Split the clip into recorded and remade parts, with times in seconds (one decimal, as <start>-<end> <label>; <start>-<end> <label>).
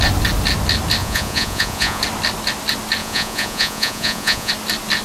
0.0-1.0 recorded; 1.0-2.0 remade; 2.0-3.0 recorded; 3.0-4.5 remade; 4.5-5.0 recorded